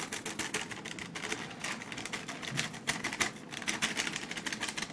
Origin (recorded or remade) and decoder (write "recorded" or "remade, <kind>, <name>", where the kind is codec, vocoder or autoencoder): recorded